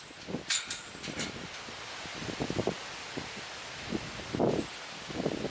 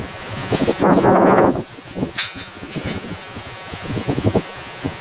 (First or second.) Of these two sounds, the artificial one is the second